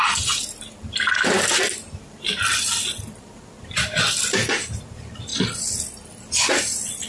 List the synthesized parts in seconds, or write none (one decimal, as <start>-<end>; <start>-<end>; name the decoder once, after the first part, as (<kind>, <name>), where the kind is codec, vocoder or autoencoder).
0.0-7.1 (vocoder, BigVGAN v2)